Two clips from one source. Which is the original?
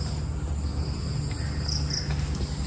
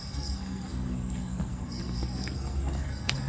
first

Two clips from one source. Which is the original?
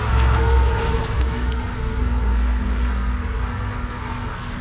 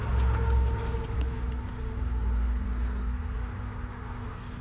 second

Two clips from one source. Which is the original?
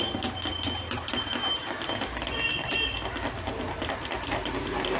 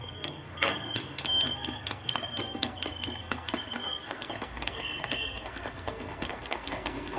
first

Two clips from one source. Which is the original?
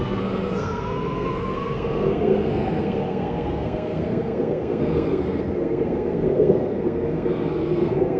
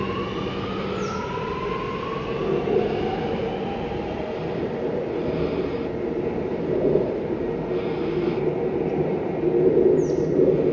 second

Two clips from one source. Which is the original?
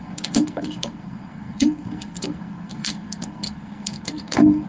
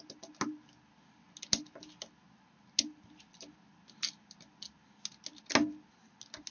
second